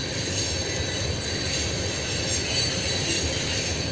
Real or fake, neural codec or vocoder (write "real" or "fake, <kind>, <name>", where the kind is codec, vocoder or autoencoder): real